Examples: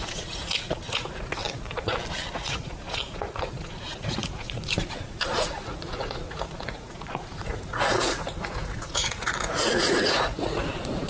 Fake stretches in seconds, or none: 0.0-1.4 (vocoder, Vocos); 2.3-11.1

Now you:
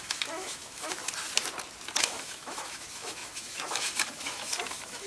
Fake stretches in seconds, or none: 0.0-1.0 (autoencoder, DAC-VAE); 2.0-5.1

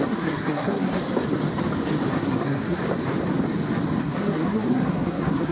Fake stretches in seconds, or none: 0.0-1.0 (codec, SNAC); 2.1-2.8; 4.0-5.5

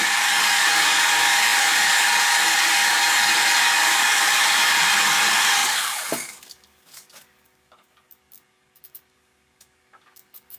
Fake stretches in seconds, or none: 0.0-10.6 (codec, DAC)